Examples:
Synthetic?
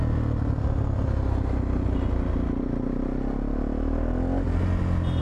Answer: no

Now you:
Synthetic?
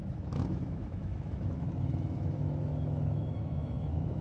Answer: yes